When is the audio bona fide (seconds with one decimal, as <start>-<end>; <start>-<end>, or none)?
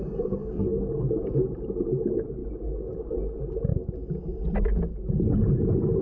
0.0-0.4; 1.0-6.0